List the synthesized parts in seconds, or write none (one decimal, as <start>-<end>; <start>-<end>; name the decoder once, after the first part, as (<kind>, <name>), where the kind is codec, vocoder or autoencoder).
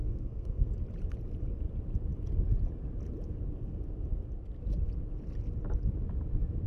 0.0-0.7 (codec, SNAC)